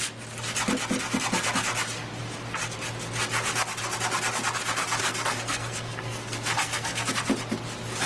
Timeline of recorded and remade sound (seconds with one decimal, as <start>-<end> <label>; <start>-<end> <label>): 0.0-5.0 recorded; 5.0-7.1 remade; 7.1-8.1 recorded